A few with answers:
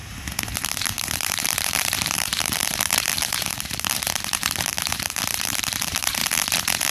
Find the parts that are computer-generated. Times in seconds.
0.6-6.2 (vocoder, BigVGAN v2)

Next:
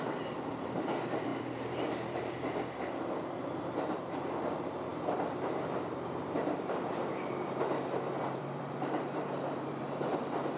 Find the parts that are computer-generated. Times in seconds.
0.0-10.6 (vocoder, BigVGAN v2)

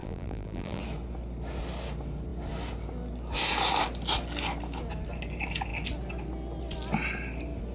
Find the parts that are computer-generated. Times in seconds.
0.0-0.8 (vocoder, BigVGAN v2)

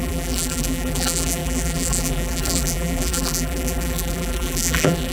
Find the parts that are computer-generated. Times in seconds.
0.0-5.1 (vocoder, BigVGAN v2)

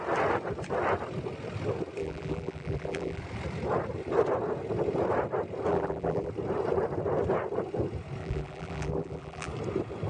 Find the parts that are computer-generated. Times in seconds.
2.0-3.2 (vocoder, BigVGAN v2); 5.7-6.3; 8.2-9.5

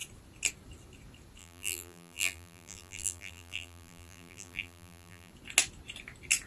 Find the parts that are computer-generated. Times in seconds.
1.4-5.3 (vocoder, BigVGAN v2)

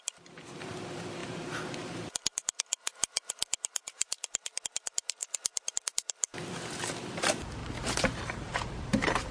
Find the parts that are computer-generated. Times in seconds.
0.0-7.6 (vocoder, BigVGAN v2); 8.2-9.3

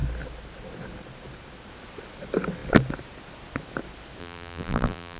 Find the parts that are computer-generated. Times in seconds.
4.2-5.2 (vocoder, BigVGAN v2)